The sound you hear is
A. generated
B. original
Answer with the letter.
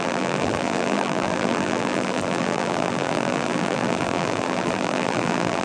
A